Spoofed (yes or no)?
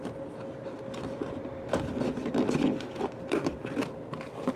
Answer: yes